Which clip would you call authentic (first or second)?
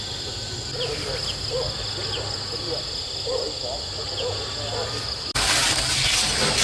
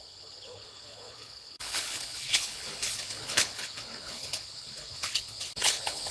first